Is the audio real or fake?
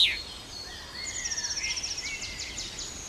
real